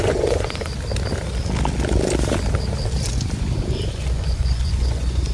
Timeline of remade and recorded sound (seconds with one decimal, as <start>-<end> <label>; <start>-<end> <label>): 0.0-0.7 remade; 0.7-3.9 recorded; 3.9-5.3 remade

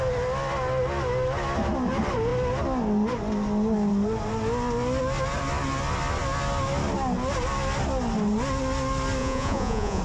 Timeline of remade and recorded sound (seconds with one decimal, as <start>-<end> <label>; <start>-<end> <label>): 0.0-9.2 recorded; 9.2-10.0 remade

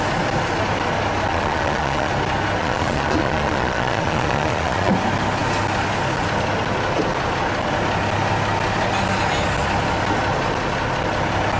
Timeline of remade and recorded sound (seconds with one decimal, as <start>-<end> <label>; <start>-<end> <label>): 0.0-1.3 recorded; 1.3-2.1 remade; 2.1-2.6 recorded; 2.6-4.9 remade; 4.9-11.6 recorded

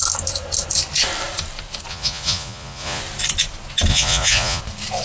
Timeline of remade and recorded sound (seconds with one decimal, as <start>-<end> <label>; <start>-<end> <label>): 0.0-1.9 recorded; 1.9-3.0 remade; 3.0-3.9 recorded; 3.9-4.6 remade; 4.6-5.0 recorded

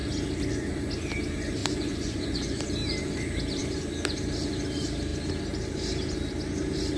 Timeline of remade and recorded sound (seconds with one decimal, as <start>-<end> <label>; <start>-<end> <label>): 0.0-1.6 recorded; 1.6-2.6 remade; 2.6-7.0 recorded

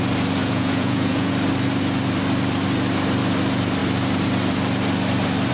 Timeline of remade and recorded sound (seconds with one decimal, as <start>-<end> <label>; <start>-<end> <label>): 0.0-0.4 recorded; 0.4-1.3 remade; 1.3-5.5 recorded

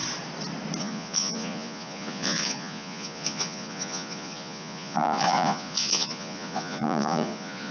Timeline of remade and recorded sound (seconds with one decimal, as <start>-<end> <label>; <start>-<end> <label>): 0.0-0.8 recorded; 0.8-7.7 remade